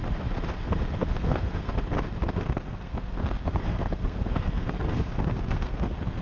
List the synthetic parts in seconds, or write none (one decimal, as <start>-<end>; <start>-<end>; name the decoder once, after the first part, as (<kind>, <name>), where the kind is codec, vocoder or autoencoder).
1.0-1.8 (codec, SNAC); 2.2-6.2